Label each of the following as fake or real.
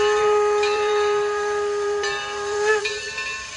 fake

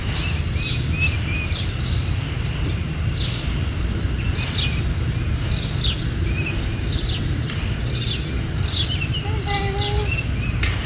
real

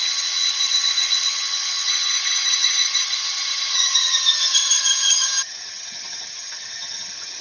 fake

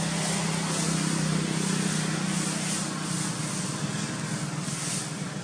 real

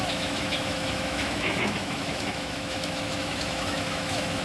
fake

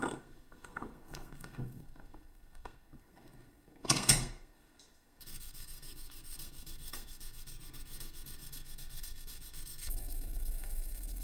fake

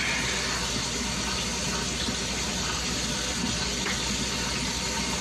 real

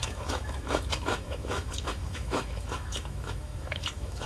fake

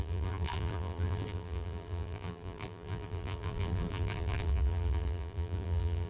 fake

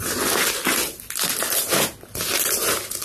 real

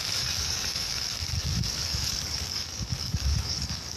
fake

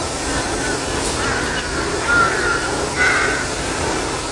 real